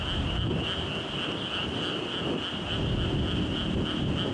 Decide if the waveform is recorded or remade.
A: recorded